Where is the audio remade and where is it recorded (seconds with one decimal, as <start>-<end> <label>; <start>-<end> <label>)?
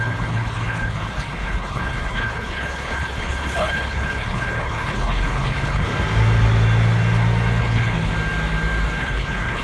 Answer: 0.0-5.9 remade; 5.9-7.6 recorded; 7.6-8.1 remade; 8.1-9.0 recorded; 9.0-9.6 remade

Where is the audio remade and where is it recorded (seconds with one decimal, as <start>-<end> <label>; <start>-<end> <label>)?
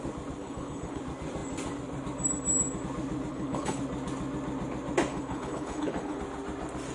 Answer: 0.0-0.4 recorded; 0.4-1.0 remade; 1.0-3.3 recorded; 3.3-3.8 remade; 3.8-5.1 recorded; 5.1-6.2 remade; 6.2-6.9 recorded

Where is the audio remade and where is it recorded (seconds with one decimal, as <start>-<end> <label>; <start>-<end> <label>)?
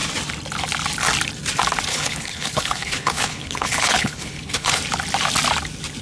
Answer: 0.0-1.9 recorded; 1.9-4.8 remade; 4.8-6.0 recorded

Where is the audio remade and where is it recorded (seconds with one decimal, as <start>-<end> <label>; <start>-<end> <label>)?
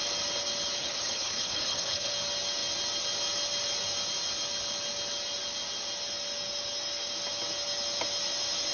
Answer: 0.0-0.8 recorded; 0.8-2.1 remade; 2.1-8.7 recorded